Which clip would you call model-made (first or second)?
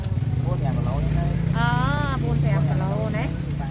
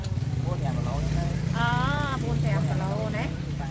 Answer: second